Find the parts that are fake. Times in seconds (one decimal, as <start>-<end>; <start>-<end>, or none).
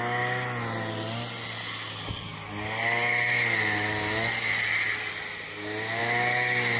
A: none